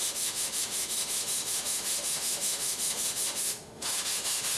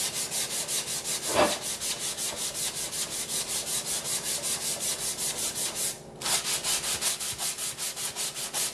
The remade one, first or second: first